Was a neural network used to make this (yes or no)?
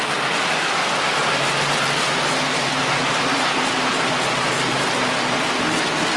no